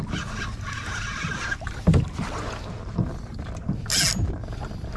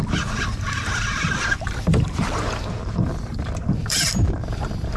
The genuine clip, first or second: first